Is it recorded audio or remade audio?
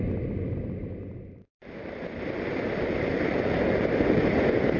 recorded